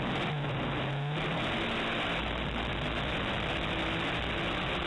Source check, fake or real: real